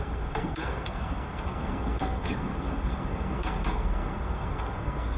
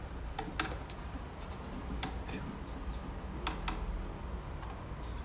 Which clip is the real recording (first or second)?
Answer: second